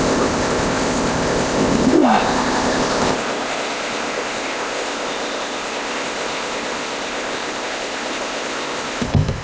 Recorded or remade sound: remade